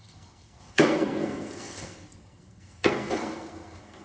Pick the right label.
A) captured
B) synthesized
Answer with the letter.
B